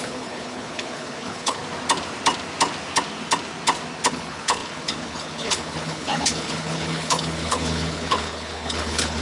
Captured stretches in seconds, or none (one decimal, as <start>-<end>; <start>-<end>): 1.6-4.1